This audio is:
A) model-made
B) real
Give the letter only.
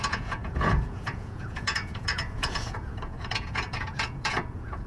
A